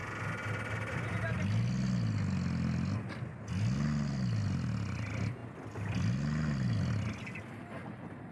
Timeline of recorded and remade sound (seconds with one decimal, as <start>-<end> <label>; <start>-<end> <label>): 0.0-8.3 recorded